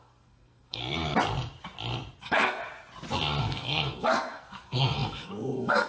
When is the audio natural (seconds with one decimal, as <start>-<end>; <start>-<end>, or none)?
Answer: 0.8-2.2; 2.6-3.4